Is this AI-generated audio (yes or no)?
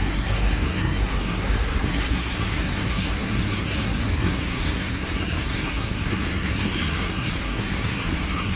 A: yes